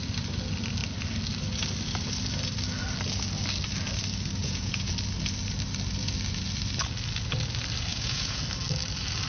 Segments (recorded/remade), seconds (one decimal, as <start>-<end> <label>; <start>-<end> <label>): 0.0-4.4 recorded; 4.4-4.9 remade; 4.9-7.9 recorded; 7.9-8.4 remade; 8.4-9.3 recorded